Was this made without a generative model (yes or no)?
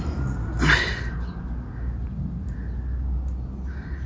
yes